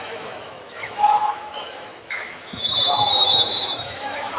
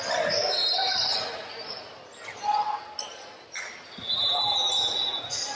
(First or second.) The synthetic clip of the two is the first